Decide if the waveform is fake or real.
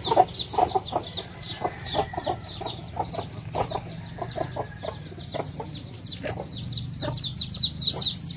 real